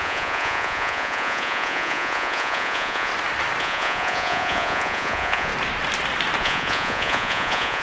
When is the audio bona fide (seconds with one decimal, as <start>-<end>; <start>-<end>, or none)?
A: 3.1-3.6; 5.5-6.4